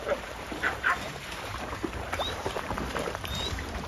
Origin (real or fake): fake